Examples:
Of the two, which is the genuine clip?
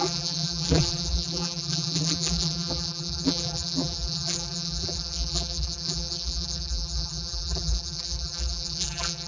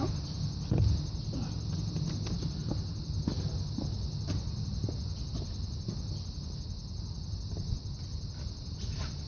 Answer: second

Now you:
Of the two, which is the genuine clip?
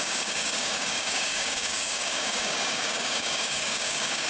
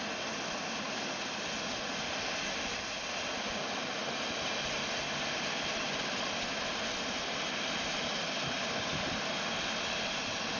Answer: second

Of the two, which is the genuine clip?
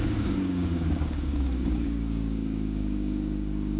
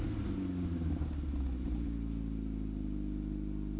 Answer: second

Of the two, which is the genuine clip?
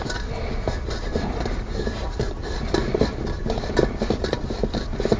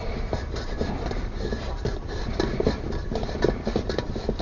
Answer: first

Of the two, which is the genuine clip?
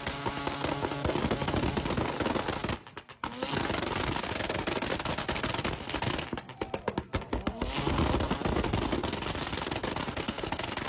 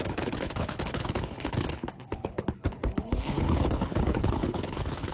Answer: first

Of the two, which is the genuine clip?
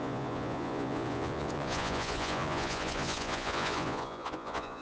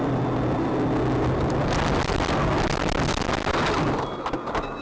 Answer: second